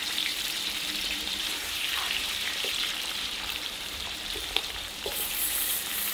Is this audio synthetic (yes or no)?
yes